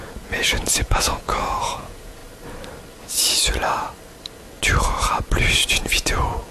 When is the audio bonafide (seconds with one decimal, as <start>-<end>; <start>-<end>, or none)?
2.2-5.7